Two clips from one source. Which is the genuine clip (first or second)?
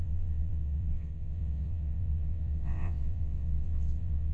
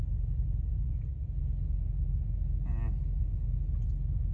second